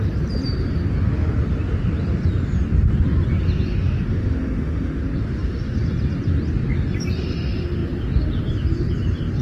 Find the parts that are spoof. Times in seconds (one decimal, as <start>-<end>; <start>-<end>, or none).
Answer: 4.1-5.0